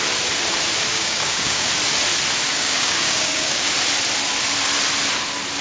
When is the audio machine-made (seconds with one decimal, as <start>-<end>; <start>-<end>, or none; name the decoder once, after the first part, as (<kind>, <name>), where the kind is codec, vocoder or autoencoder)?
0.9-1.7 (codec, DAC); 2.5-3.7